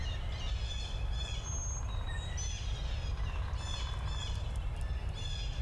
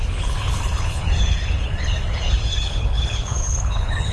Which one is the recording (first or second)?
first